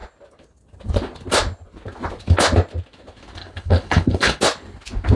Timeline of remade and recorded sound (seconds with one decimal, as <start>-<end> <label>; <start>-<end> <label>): 0.0-3.4 recorded; 3.4-4.4 remade; 4.4-5.2 recorded